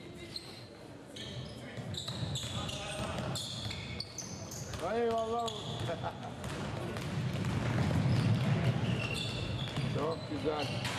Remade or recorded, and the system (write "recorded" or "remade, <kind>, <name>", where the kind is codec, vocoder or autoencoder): recorded